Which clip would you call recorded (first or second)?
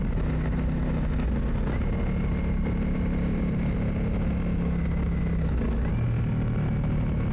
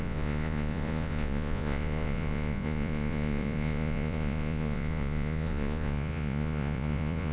first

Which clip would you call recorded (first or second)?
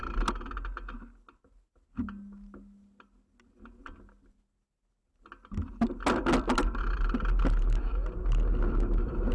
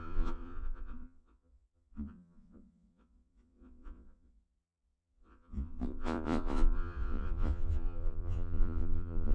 first